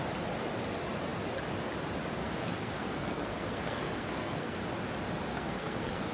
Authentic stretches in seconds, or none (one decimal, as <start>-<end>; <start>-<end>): 0.0-2.2; 4.6-5.3

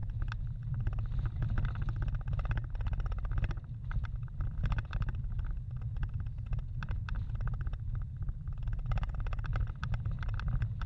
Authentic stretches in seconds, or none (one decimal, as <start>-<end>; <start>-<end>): 0.0-10.9

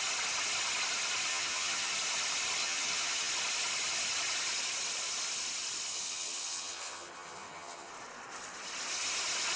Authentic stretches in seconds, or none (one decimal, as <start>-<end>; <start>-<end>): 0.0-1.3; 1.9-2.6; 3.3-5.9; 7.9-9.6

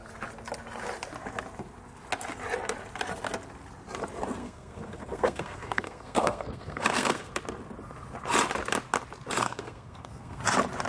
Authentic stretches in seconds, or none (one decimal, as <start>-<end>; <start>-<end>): 0.0-4.4; 7.3-9.4; 10.4-10.9

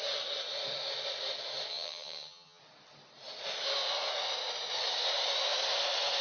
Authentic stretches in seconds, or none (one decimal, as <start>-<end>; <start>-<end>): 0.0-1.7; 2.6-6.2

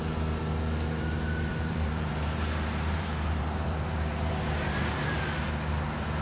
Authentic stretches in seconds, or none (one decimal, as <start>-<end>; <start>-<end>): 0.0-1.5; 5.2-6.2